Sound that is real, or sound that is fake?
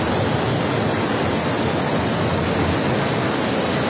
real